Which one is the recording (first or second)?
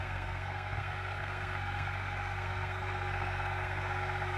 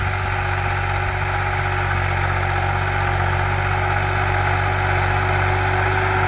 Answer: second